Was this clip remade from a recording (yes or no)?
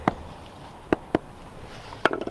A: no